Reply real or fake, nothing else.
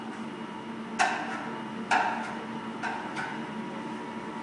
real